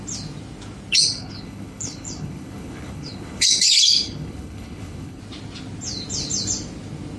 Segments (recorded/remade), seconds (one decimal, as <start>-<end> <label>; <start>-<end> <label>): 0.0-0.9 recorded; 0.9-5.2 remade; 5.2-7.2 recorded